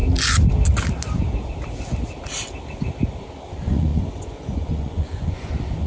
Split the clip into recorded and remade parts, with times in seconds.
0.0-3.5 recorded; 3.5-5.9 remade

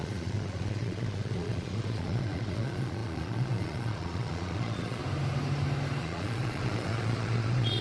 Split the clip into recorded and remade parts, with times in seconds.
0.0-5.0 remade; 5.0-6.0 recorded; 6.0-7.8 remade